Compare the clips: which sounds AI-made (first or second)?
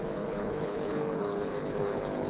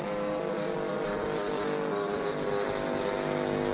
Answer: first